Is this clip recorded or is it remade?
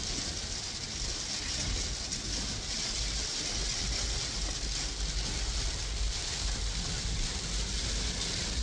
recorded